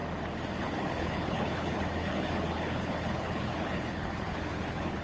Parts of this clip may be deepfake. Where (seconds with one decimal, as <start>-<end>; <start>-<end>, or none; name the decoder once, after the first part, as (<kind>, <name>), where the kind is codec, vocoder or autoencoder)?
0.6-5.0 (codec, HILCodec)